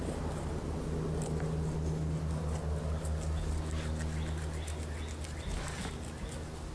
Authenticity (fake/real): real